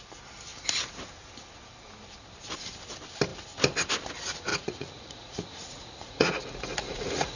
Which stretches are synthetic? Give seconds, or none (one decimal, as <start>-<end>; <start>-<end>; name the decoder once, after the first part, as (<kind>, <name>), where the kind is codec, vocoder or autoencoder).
4.5-7.4 (vocoder, Vocos)